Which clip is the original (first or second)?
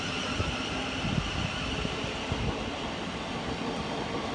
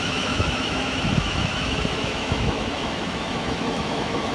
first